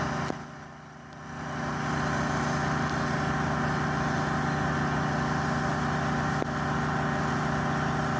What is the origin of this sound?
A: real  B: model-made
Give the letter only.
A